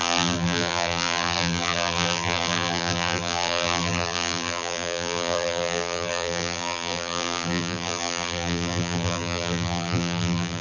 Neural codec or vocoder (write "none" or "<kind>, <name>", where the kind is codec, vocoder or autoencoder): vocoder, BigVGAN v2